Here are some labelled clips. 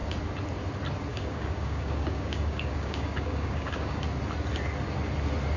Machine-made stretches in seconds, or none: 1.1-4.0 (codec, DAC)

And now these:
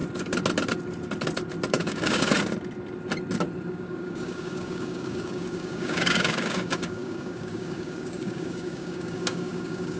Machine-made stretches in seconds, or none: 1.7-2.3 (codec, DAC); 3.7-10.0

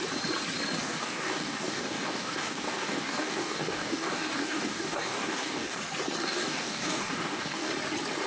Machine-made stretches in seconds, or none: 0.8-5.8 (codec, DAC); 6.2-7.7

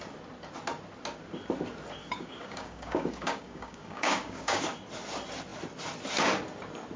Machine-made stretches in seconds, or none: 2.0-4.6 (codec, DAC)

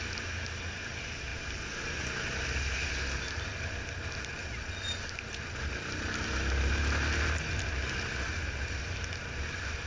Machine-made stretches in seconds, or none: none

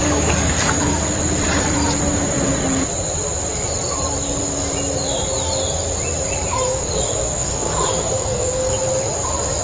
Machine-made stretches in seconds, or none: 0.0-0.9 (codec, DAC); 6.5-8.7

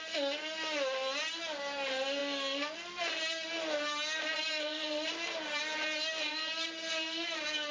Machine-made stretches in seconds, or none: none

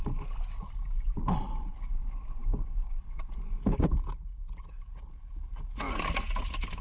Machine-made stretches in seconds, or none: 2.4-3.0 (codec, DAC)